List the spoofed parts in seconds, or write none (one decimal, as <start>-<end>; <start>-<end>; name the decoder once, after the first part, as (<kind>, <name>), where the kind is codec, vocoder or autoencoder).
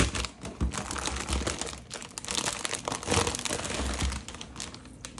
none